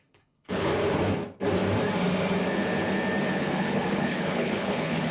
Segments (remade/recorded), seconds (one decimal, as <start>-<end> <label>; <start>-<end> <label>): 0.0-0.7 remade; 0.7-3.3 recorded; 3.3-5.1 remade